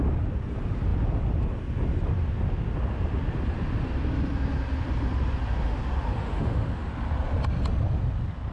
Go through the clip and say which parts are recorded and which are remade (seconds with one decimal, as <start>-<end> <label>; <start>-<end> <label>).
0.0-6.2 recorded; 6.2-6.9 remade; 6.9-8.5 recorded